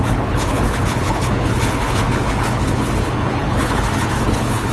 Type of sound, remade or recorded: remade